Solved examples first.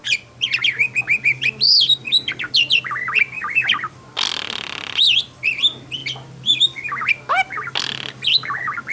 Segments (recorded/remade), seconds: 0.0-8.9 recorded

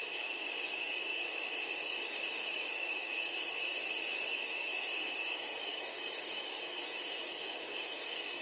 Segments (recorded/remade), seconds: 0.0-8.4 remade

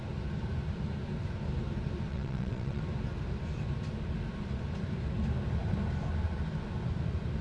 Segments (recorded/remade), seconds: 0.0-2.1 recorded; 2.1-2.8 remade; 2.8-7.4 recorded